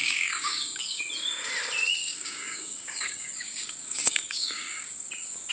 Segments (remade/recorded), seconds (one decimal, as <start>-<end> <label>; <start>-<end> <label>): 0.0-1.0 remade; 1.0-2.0 recorded; 2.0-5.5 remade